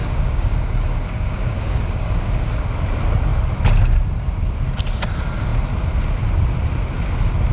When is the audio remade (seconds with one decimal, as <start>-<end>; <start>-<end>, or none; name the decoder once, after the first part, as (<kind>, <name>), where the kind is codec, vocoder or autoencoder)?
0.0-2.7 (codec, DAC)